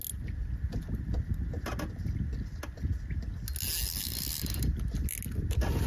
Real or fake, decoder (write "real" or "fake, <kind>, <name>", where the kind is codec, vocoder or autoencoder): real